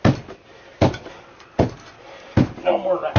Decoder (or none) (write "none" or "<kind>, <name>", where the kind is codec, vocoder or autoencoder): none